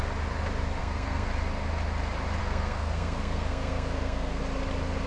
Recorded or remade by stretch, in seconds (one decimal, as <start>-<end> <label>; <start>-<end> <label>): 0.0-0.8 recorded; 0.8-1.3 remade; 1.3-2.4 recorded; 2.4-4.4 remade; 4.4-5.1 recorded